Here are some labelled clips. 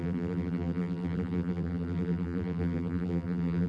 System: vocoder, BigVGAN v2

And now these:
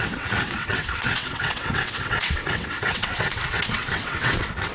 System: vocoder, WaveNeXt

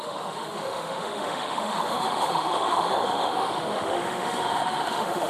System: autoencoder, DAC-VAE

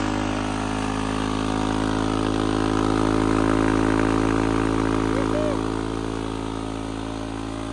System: none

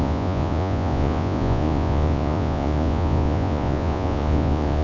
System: vocoder, Vocos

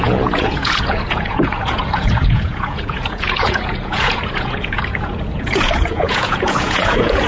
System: vocoder, Vocos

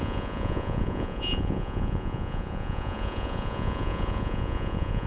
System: vocoder, Vocos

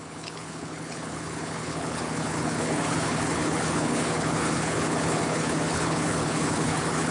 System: codec, HILCodec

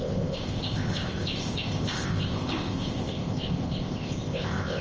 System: codec, ZipCodec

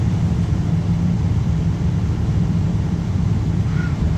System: vocoder, BigVGAN v2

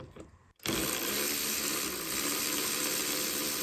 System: none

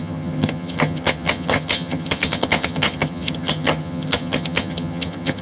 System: vocoder, HiFi-GAN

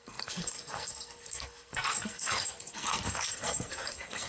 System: codec, SNAC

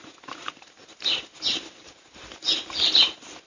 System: none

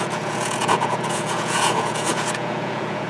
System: vocoder, Vocos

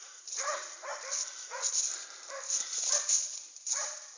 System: none